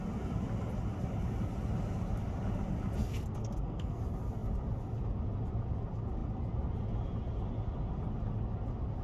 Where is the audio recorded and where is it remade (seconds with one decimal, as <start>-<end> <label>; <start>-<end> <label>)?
0.0-3.0 recorded; 3.0-4.0 remade; 4.0-9.0 recorded